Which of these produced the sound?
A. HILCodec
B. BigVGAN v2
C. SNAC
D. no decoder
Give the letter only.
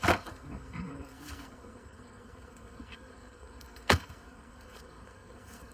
C